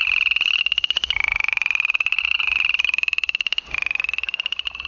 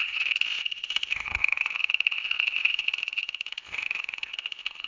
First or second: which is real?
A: first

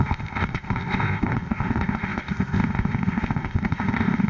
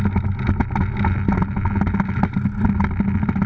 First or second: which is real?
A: second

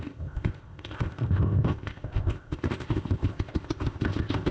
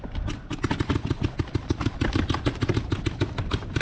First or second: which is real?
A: second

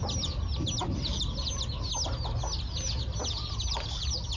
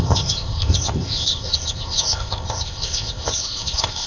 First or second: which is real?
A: first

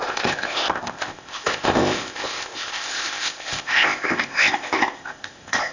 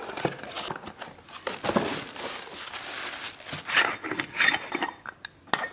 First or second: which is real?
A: second